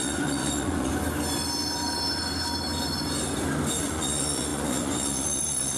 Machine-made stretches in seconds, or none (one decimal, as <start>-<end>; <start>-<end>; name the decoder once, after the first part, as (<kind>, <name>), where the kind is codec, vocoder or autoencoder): 0.0-0.9 (vocoder, Vocos); 3.8-5.8